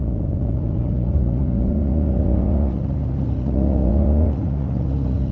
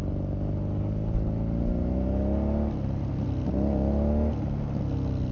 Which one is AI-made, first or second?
first